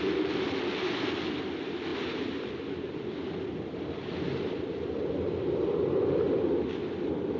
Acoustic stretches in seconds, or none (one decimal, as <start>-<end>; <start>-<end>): 0.0-7.4